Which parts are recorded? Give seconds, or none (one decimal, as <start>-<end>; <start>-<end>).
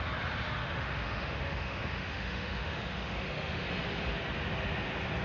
0.0-0.6; 3.7-5.2